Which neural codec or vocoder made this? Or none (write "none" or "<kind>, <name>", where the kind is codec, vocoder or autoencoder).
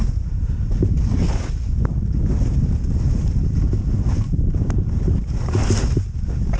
none